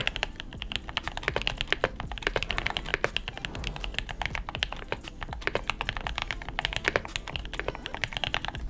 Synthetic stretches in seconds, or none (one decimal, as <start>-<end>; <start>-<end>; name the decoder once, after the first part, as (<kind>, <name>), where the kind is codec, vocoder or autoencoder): none